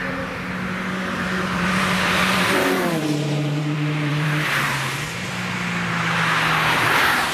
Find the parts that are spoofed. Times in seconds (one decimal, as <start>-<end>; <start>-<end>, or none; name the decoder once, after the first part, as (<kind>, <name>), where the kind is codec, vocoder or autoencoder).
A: 1.0-4.6 (vocoder, BigVGAN v2)